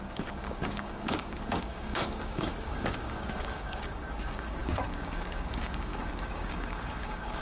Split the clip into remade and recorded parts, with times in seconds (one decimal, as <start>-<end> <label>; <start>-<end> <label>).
0.0-7.4 remade